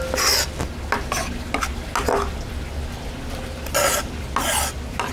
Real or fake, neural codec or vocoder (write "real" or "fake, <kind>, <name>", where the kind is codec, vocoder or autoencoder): real